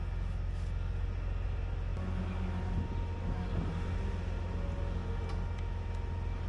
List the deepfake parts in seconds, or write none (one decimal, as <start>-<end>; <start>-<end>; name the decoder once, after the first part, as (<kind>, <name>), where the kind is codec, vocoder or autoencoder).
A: none